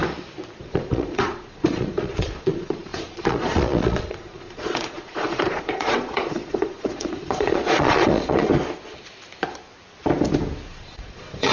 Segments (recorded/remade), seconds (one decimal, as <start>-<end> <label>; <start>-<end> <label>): 0.0-0.6 recorded; 0.6-8.5 remade; 8.5-10.7 recorded; 10.7-11.5 remade

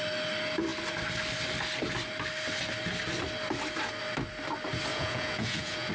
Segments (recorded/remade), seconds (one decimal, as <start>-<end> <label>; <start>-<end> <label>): 0.0-4.9 recorded; 4.9-5.9 remade

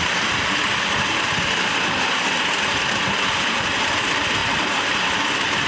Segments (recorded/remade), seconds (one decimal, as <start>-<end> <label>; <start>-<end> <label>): 0.0-4.4 recorded; 4.4-5.3 remade; 5.3-5.7 recorded

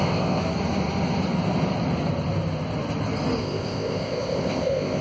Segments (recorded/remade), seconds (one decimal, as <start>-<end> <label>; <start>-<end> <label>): 0.0-0.4 remade; 0.4-3.4 recorded; 3.4-5.0 remade

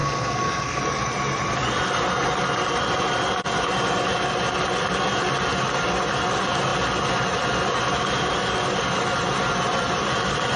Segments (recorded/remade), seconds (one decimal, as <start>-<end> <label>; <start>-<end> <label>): 0.0-0.8 remade; 0.8-10.6 recorded

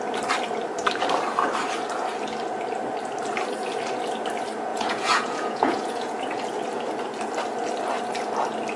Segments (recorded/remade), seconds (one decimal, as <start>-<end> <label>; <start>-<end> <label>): 0.0-4.7 recorded; 4.7-6.3 remade; 6.3-8.8 recorded